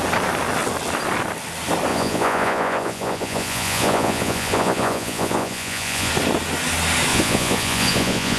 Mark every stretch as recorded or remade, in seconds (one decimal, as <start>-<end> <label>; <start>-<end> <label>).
0.0-1.9 recorded; 1.9-6.1 remade; 6.1-7.1 recorded; 7.1-8.4 remade